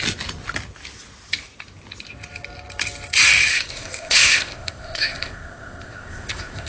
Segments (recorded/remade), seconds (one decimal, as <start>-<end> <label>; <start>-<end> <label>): 0.0-3.5 recorded; 3.5-6.7 remade

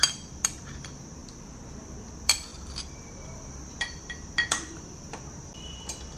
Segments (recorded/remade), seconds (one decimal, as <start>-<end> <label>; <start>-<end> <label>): 0.0-1.2 remade; 1.2-2.0 recorded; 2.0-6.2 remade